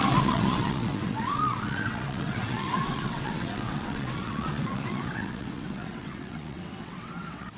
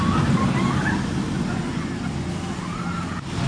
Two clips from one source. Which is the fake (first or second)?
first